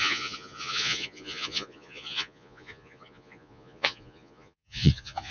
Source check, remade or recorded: remade